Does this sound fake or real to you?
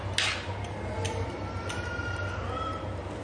real